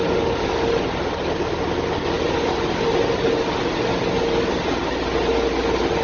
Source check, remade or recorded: recorded